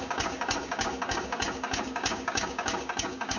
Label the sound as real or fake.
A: fake